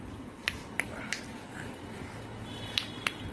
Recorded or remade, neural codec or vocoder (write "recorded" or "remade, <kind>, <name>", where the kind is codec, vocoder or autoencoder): recorded